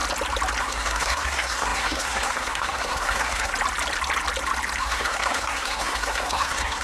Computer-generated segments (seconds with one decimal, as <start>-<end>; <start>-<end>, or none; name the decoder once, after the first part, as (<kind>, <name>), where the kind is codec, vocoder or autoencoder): 0.6-3.5 (codec, SNAC); 4.8-6.8